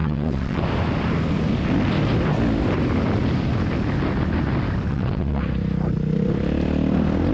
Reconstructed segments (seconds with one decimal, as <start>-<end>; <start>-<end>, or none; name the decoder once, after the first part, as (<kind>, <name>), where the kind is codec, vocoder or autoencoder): 0.0-0.6 (vocoder, WaveNeXt); 4.9-5.4